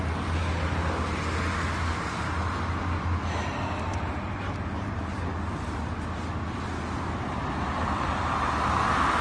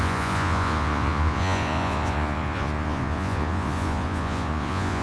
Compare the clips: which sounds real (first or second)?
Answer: first